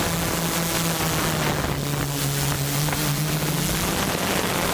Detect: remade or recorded recorded